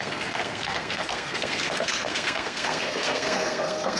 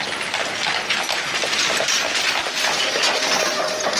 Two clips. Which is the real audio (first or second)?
second